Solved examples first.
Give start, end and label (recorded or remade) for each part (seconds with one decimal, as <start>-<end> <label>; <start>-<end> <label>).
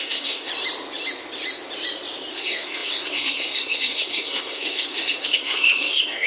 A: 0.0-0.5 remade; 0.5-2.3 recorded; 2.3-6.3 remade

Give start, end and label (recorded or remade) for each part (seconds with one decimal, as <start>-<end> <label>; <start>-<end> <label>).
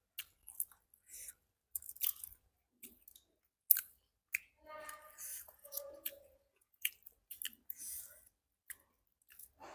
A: 0.0-5.3 recorded; 5.3-6.9 remade; 6.9-9.7 recorded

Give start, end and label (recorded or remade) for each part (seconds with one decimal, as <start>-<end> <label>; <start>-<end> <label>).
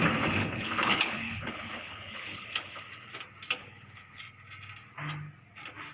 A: 0.0-0.4 recorded; 0.4-2.8 remade; 2.8-3.6 recorded; 3.6-4.2 remade; 4.2-5.9 recorded